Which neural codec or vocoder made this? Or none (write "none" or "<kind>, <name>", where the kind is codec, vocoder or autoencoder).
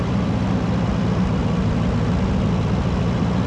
vocoder, BigVGAN v2